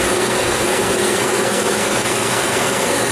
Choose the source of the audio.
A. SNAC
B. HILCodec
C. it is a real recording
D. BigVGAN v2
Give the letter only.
A